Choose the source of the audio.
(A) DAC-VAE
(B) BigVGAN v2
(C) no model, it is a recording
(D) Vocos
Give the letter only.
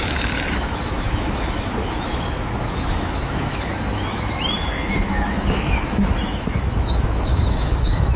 A